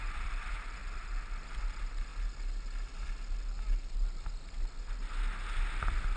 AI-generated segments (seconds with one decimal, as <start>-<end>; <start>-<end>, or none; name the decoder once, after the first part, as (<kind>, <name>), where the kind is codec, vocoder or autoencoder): none